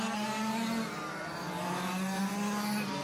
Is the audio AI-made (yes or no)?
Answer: no